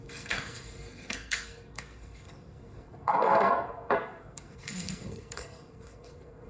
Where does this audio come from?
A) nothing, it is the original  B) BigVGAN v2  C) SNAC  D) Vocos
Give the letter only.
C